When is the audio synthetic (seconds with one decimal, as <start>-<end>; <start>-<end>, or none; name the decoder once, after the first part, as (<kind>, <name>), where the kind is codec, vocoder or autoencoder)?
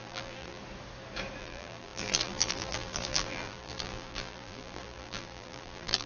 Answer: 0.0-0.6 (vocoder, BigVGAN v2); 1.4-6.1